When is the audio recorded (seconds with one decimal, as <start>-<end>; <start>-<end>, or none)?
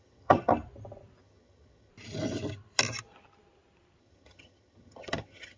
0.5-1.2; 1.9-4.0